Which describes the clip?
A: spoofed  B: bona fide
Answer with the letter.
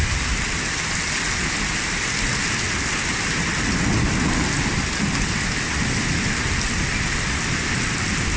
B